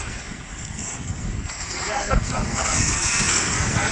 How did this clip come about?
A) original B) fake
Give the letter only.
B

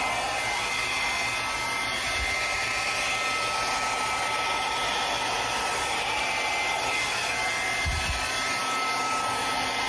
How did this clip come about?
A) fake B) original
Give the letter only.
B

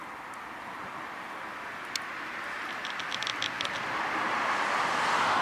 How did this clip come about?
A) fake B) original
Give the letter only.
B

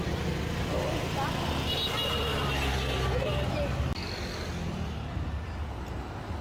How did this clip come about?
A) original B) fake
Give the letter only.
A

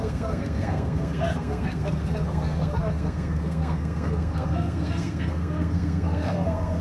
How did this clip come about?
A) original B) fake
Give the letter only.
B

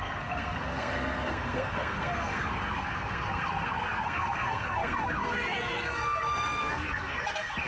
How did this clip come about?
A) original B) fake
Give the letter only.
B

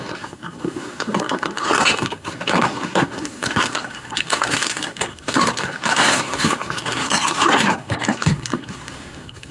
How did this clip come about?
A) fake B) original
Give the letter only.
A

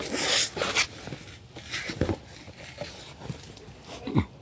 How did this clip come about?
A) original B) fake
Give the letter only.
A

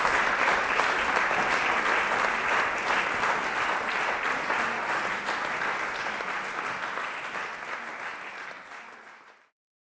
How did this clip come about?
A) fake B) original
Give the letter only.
B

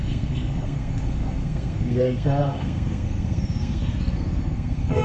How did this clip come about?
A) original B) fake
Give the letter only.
B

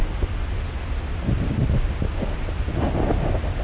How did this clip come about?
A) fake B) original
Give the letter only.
B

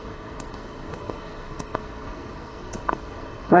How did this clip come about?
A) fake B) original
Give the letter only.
A